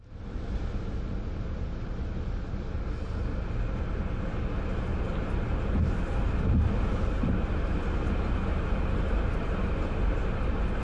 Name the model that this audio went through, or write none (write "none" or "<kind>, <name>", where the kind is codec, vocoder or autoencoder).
none